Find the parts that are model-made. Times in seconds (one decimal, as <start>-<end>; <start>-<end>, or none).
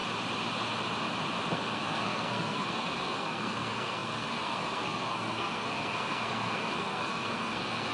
1.5-7.9